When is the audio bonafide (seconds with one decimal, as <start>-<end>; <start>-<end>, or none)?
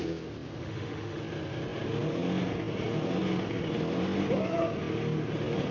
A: 0.0-0.6; 1.2-5.7